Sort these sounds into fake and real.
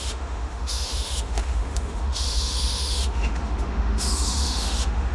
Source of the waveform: fake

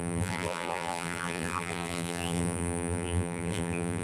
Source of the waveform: fake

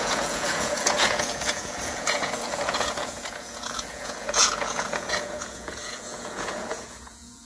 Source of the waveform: fake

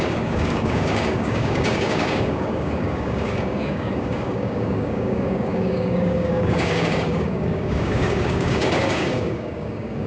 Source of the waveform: fake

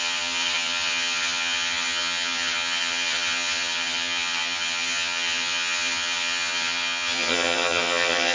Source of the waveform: fake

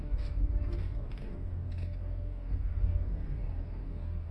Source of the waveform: fake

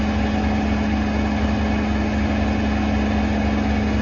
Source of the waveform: real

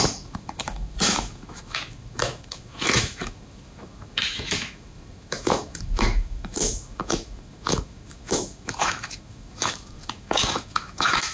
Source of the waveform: fake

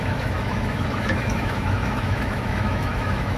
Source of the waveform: fake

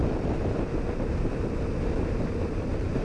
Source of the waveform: fake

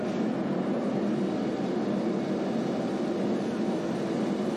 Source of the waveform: real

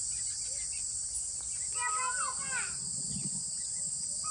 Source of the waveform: real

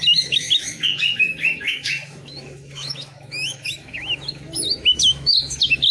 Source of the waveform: fake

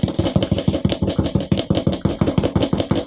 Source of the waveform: real